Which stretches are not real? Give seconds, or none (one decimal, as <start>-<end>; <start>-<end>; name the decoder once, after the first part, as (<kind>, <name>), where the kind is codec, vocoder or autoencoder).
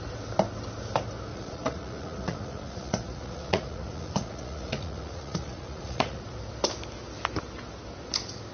1.3-6.2 (vocoder, Vocos)